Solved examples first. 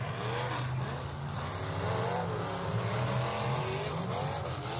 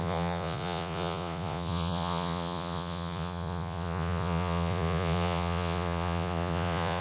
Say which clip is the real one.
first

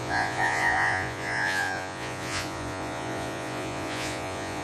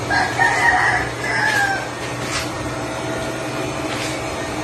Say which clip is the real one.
second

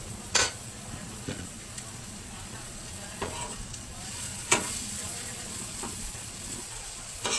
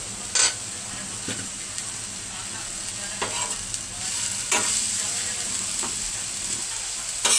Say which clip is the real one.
second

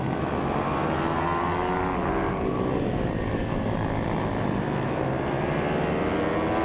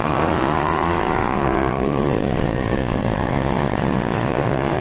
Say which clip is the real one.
first